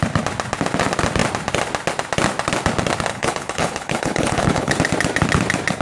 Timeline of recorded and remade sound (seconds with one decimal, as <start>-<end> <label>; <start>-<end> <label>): 0.0-3.1 recorded; 3.1-4.7 remade; 4.7-5.8 recorded

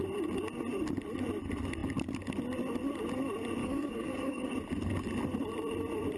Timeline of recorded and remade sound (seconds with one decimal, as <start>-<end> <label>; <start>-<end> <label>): 0.0-3.6 recorded; 3.6-4.5 remade; 4.5-6.2 recorded

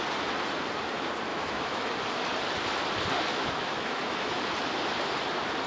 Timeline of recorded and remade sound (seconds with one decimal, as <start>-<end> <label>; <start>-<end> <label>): 0.0-1.3 recorded; 1.3-1.9 remade; 1.9-3.3 recorded; 3.3-4.3 remade; 4.3-5.7 recorded